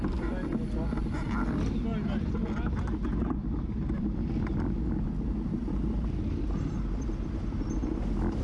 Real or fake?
real